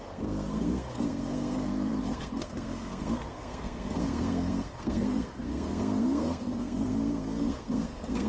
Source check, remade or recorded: remade